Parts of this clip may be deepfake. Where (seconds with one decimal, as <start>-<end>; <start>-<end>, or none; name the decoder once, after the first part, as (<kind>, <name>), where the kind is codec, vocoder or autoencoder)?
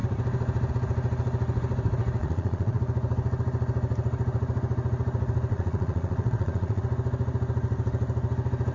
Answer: 2.2-2.8 (vocoder, Vocos); 5.5-6.8